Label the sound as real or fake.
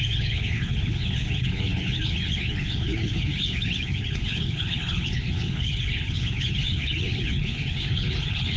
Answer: fake